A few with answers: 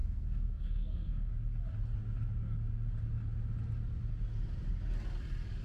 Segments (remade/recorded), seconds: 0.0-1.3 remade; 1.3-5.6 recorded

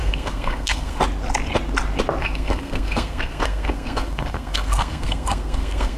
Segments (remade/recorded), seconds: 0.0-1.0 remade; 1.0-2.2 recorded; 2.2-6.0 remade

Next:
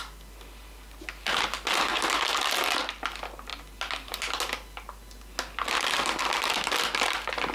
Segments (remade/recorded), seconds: 0.0-7.5 recorded

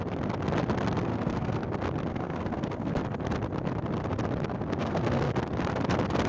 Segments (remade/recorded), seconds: 0.0-1.1 recorded; 1.1-1.6 remade; 1.6-2.1 recorded; 2.1-2.9 remade; 2.9-4.8 recorded; 4.8-5.3 remade; 5.3-6.3 recorded

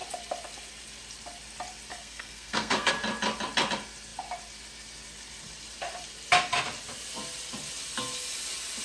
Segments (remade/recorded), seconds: 0.0-1.9 recorded; 1.9-2.9 remade; 2.9-8.8 recorded

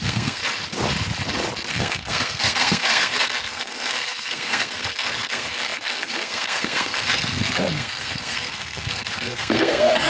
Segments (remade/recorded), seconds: 0.0-0.4 remade; 0.4-1.7 recorded; 1.7-10.1 remade

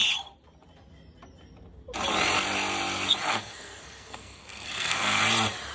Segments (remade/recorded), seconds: 0.0-3.3 recorded; 3.3-5.2 remade; 5.2-5.7 recorded

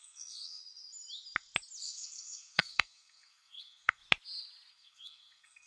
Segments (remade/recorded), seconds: 0.0-0.6 remade; 0.6-1.8 recorded; 1.8-4.0 remade; 4.0-4.7 recorded; 4.7-5.7 remade